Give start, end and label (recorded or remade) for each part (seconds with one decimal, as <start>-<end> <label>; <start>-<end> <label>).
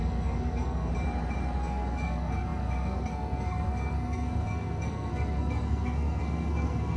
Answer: 0.0-0.9 remade; 0.9-1.6 recorded; 1.6-7.0 remade